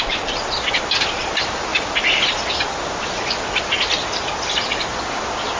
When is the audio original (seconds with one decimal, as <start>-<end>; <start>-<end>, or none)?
0.0-5.6